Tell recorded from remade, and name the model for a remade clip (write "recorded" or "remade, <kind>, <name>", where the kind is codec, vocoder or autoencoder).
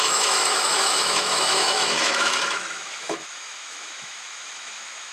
remade, autoencoder, DAC-VAE